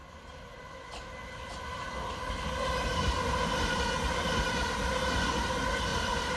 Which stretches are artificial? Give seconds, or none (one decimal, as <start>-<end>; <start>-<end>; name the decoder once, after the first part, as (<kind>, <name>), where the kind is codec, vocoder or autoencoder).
5.9-6.4 (vocoder, BigVGAN v2)